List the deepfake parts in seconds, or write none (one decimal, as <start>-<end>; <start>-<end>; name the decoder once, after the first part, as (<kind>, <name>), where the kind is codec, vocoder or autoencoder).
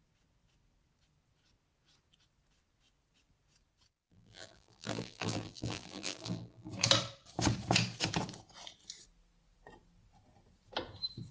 4.1-6.7 (vocoder, BigVGAN v2)